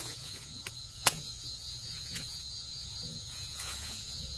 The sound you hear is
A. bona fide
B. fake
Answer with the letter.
B